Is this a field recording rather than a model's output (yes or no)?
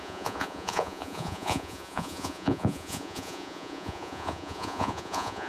no